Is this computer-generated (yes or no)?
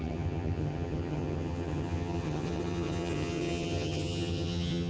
yes